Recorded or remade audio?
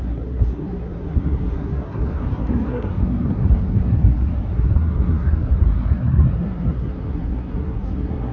remade